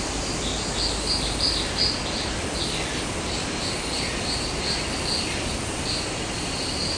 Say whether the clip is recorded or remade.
recorded